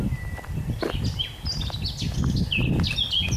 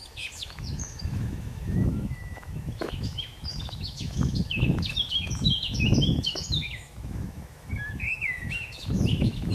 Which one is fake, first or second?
second